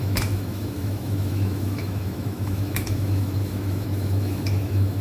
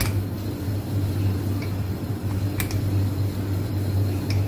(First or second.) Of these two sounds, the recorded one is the second